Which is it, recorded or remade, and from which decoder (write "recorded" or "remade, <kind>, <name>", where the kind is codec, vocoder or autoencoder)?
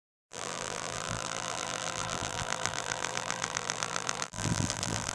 remade, vocoder, BigVGAN v2